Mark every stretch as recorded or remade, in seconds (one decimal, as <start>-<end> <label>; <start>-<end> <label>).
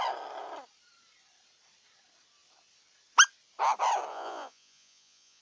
0.0-4.1 recorded; 4.1-5.4 remade